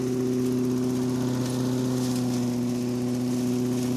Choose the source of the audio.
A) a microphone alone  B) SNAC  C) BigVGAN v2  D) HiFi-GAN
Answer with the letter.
A